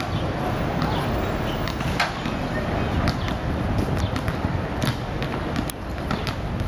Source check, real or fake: real